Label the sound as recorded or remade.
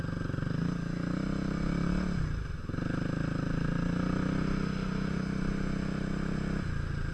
recorded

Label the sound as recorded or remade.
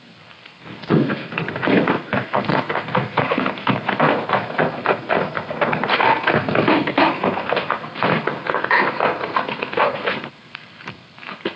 remade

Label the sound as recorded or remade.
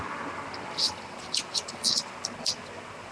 recorded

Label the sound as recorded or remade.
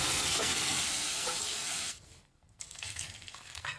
remade